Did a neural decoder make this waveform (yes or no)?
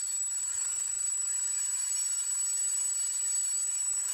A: yes